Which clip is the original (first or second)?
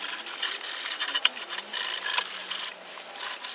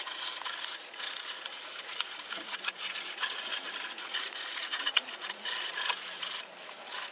first